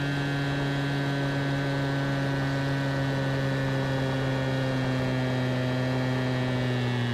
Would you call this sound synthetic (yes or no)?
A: no